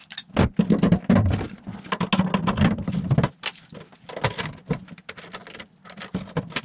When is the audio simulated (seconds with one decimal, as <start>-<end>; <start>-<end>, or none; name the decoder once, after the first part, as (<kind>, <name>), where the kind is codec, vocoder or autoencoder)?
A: none